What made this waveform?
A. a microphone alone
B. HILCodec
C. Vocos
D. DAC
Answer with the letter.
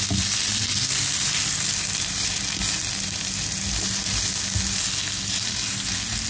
A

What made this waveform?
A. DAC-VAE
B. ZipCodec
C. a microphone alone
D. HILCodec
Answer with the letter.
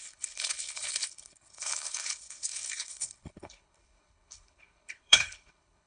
D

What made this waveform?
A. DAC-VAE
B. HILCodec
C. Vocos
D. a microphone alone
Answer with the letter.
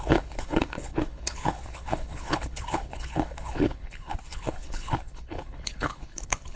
B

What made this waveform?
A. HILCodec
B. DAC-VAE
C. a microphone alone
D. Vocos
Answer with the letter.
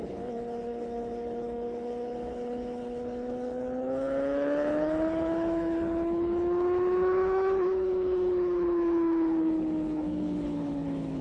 A